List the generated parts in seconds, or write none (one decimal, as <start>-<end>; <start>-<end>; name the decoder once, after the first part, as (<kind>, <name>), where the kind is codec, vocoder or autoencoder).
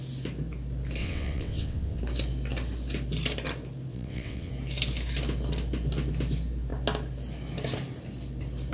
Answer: 1.0-2.0 (vocoder, WaveNeXt); 3.9-4.5